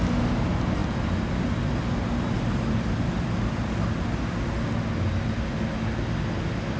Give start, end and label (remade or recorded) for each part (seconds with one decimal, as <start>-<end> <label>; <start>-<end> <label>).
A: 0.0-6.8 recorded